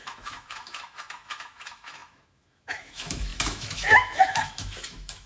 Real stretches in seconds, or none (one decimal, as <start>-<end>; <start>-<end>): none